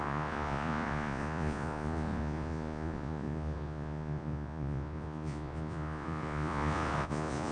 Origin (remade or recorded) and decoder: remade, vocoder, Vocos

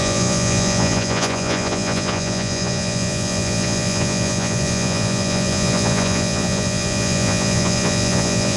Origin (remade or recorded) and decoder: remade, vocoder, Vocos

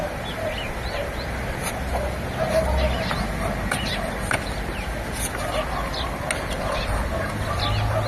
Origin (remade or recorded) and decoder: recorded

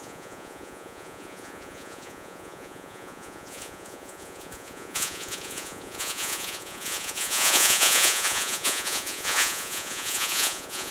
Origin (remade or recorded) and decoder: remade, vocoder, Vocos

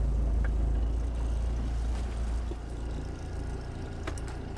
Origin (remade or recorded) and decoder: recorded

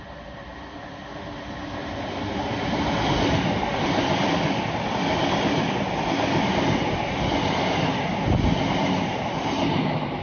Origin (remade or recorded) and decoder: recorded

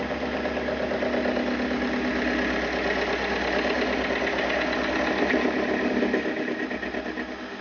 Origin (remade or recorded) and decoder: recorded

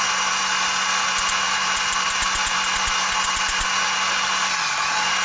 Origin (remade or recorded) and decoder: recorded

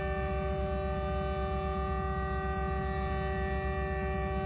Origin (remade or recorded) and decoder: recorded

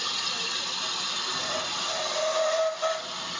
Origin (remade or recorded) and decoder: recorded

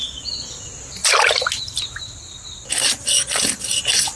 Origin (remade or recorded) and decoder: recorded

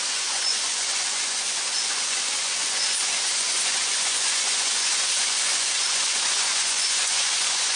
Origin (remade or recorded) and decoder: remade, vocoder, Vocos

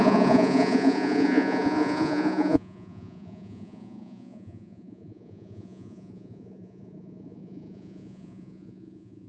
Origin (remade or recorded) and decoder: remade, vocoder, Vocos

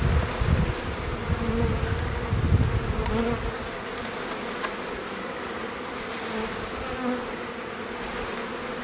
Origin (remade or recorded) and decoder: recorded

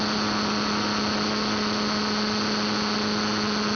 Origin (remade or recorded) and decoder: recorded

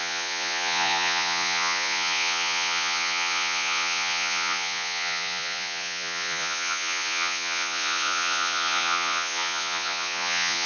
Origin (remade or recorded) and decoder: remade, vocoder, Vocos